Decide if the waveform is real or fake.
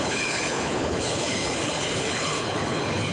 fake